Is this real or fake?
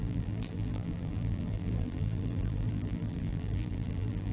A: fake